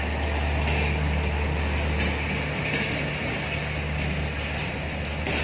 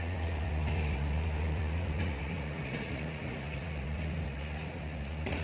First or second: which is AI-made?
second